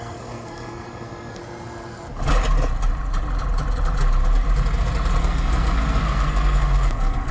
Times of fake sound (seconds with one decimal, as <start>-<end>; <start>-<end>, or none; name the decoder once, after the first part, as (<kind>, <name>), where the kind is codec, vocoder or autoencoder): 0.0-1.4 (codec, SNAC); 5.2-7.3